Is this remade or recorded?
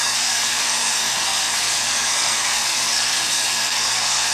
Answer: remade